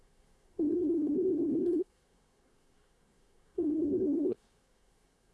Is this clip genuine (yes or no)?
no